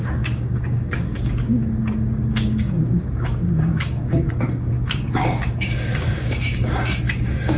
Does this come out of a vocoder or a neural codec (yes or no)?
yes